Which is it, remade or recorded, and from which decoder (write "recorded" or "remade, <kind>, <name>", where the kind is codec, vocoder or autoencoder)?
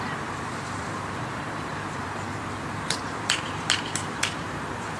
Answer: remade, vocoder, BigVGAN v2